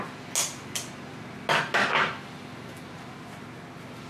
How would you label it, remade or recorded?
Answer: recorded